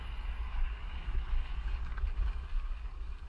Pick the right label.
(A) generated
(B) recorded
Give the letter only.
A